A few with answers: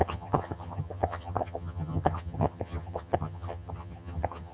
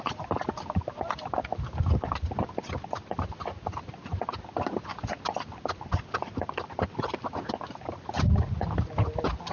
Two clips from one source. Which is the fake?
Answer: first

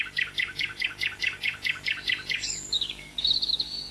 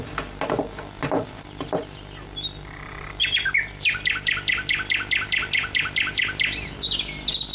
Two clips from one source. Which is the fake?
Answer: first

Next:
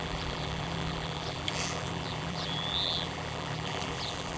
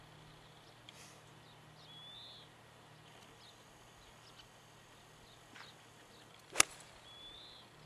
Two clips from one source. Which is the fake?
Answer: first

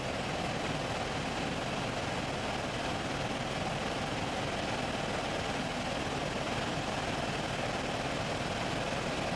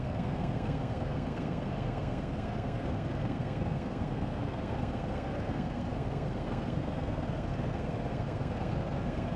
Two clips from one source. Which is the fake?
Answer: second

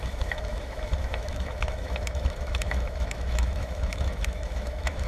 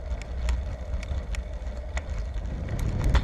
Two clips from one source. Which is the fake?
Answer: first